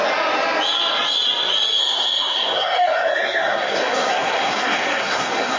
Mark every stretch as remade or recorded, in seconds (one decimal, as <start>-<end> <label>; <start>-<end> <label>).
0.0-1.8 recorded; 1.8-5.6 remade

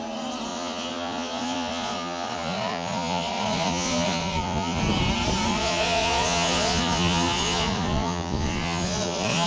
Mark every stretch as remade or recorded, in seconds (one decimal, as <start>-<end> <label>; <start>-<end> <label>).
0.0-0.5 recorded; 0.5-4.8 remade; 4.8-5.5 recorded; 5.5-9.5 remade

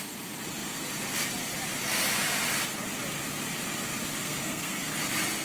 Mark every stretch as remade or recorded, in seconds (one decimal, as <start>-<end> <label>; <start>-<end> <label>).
0.0-4.2 recorded; 4.2-4.9 remade; 4.9-5.4 recorded

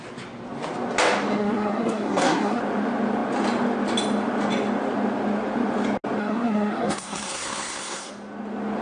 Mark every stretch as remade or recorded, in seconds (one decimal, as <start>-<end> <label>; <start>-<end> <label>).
0.0-1.3 recorded; 1.3-2.6 remade; 2.6-6.2 recorded; 6.2-8.1 remade; 8.1-8.8 recorded

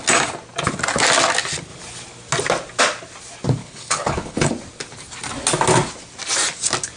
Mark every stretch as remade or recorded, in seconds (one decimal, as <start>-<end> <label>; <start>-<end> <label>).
0.0-3.6 recorded; 3.6-4.5 remade; 4.5-7.0 recorded